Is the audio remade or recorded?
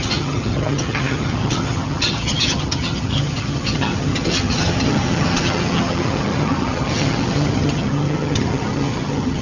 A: remade